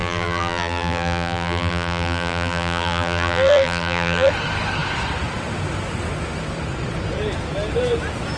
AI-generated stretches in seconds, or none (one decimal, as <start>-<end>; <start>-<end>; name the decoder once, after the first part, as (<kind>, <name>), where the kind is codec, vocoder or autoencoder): 0.0-4.3 (vocoder, BigVGAN v2)

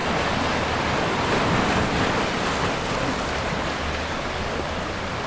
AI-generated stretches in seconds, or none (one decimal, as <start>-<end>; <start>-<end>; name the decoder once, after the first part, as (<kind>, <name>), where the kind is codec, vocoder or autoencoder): none

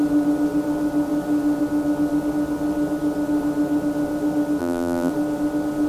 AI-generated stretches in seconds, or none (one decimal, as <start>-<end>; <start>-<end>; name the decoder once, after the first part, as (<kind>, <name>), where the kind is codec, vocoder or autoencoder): 4.6-5.1 (vocoder, BigVGAN v2)

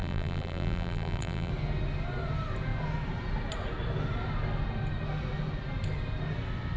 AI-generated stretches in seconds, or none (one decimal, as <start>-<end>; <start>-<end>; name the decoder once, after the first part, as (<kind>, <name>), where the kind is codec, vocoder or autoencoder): 0.0-1.5 (vocoder, BigVGAN v2)

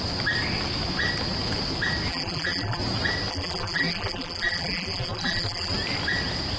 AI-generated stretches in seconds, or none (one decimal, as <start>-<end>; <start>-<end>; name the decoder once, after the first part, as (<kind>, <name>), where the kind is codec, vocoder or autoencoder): 2.1-2.8 (vocoder, BigVGAN v2); 3.3-5.7

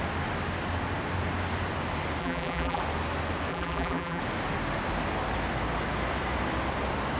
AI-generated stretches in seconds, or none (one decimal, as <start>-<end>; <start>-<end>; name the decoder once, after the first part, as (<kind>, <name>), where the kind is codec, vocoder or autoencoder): 2.2-2.8 (vocoder, BigVGAN v2); 3.5-4.2

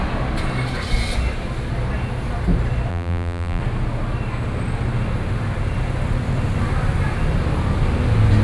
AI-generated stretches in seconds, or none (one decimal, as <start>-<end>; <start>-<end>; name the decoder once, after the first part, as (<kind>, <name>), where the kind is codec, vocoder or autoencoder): 2.9-3.6 (vocoder, BigVGAN v2)

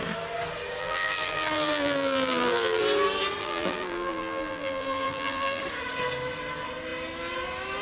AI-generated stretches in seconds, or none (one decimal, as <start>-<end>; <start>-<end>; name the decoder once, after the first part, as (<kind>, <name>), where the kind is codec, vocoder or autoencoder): 0.8-2.8 (vocoder, BigVGAN v2); 3.4-5.6